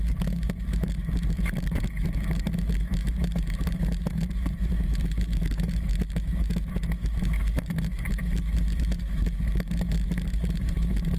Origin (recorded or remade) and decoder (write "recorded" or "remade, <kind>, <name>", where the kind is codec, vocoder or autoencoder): remade, autoencoder, DAC-VAE